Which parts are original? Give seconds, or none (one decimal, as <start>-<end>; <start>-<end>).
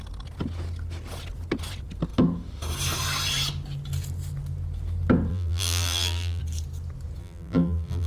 0.0-5.3; 6.4-7.2